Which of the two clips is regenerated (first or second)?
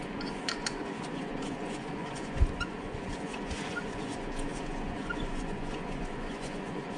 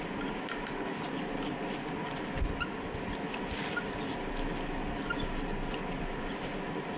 first